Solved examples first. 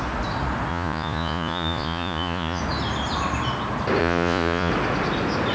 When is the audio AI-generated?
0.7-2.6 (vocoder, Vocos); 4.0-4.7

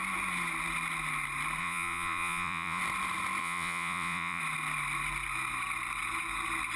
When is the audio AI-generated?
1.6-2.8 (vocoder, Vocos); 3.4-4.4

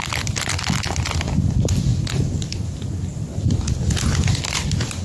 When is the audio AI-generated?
none

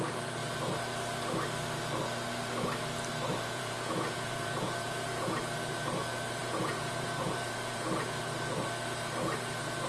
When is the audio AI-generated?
3.3-5.4 (vocoder, Vocos); 6.4-7.9

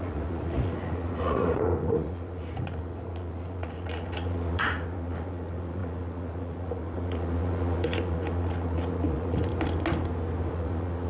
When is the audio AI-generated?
0.0-9.5 (vocoder, Vocos); 10.5-11.1

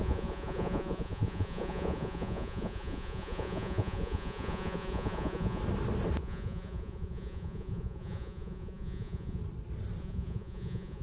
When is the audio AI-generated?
0.0-5.6 (vocoder, Vocos); 6.2-9.4; 10.0-11.0

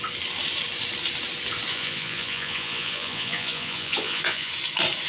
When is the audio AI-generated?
1.7-4.5 (vocoder, Vocos)